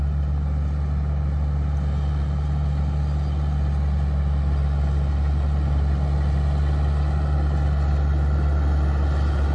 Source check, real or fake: real